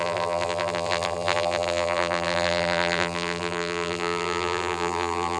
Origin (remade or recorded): remade